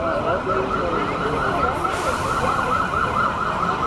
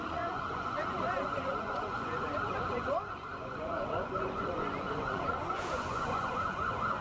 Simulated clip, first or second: second